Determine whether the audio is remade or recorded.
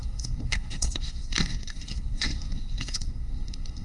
remade